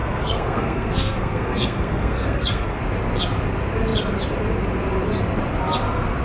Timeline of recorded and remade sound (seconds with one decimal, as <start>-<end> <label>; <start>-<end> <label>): 0.0-2.8 remade; 2.8-6.2 recorded